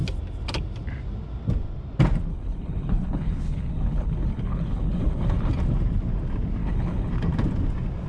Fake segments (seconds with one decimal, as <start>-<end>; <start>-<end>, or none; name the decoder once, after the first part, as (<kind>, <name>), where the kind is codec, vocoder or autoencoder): 2.3-5.5 (codec, HILCodec); 6.6-7.1